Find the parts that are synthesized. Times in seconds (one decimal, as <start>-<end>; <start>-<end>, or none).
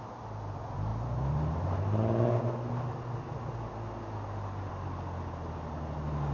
none